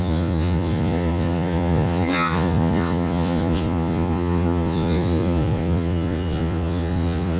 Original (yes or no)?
no